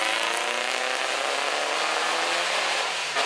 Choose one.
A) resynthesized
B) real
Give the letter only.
B